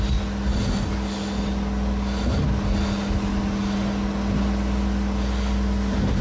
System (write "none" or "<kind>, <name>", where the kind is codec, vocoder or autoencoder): none